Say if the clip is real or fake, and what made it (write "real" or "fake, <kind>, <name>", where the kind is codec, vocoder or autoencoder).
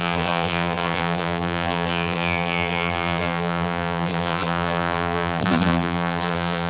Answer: fake, vocoder, BigVGAN v2